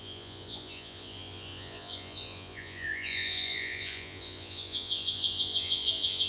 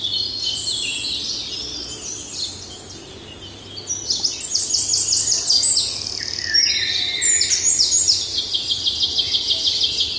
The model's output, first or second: first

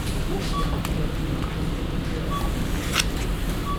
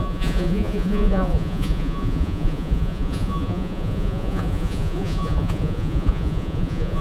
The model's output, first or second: second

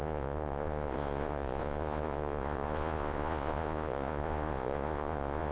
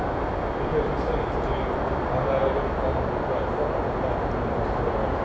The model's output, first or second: first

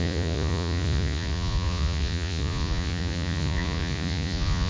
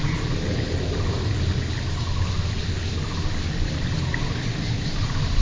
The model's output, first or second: first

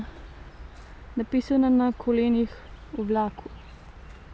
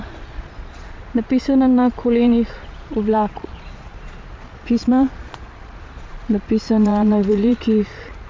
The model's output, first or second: second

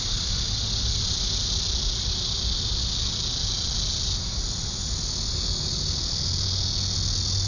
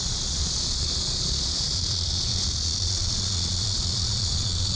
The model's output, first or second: second